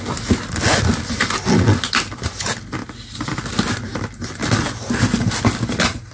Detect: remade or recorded recorded